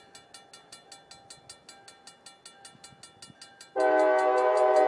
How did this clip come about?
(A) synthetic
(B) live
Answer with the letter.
B